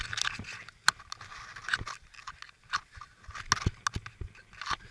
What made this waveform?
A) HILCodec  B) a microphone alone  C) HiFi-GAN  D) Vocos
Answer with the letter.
B